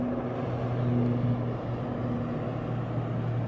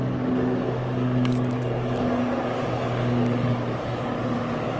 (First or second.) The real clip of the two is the first